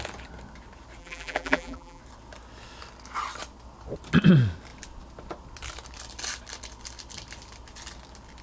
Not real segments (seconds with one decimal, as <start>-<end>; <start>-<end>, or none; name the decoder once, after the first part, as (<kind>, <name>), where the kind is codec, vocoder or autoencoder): 1.0-2.0 (vocoder, BigVGAN v2)